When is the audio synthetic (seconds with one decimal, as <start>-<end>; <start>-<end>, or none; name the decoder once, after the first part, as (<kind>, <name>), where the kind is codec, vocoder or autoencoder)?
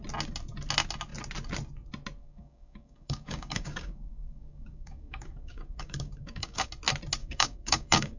2.2-6.7 (codec, DAC); 7.2-8.2